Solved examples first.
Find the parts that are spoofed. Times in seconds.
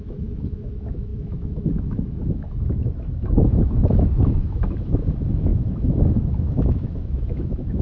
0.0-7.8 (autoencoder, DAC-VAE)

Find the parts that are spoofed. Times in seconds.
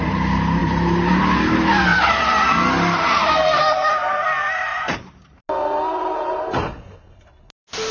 0.6-1.2 (vocoder, BigVGAN v2); 1.9-2.5; 4.7-5.4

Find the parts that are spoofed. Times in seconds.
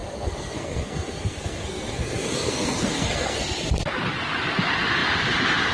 0.0-3.4 (codec, SNAC)